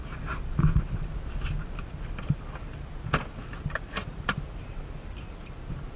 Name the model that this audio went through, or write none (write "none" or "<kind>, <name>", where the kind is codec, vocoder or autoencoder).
none